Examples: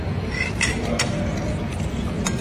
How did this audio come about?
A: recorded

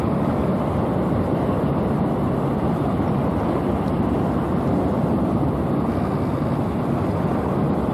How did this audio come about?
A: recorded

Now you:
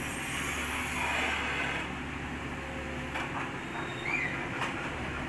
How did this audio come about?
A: recorded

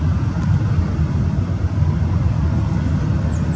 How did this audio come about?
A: recorded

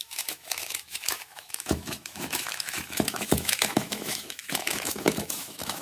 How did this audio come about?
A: remade